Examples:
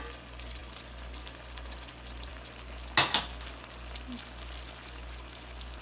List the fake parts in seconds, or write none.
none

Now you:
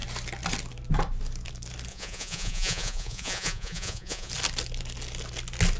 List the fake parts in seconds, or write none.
1.9-4.3 (vocoder, Vocos)

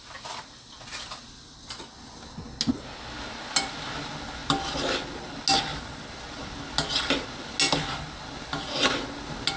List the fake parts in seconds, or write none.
none

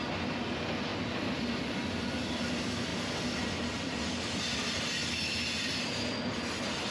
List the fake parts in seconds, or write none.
none

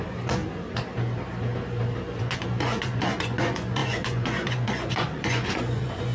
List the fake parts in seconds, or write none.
0.0-0.4 (vocoder, Vocos); 2.2-6.1

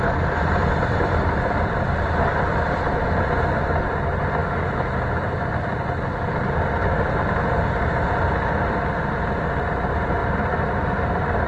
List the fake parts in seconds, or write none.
4.4-5.2 (autoencoder, DAC-VAE)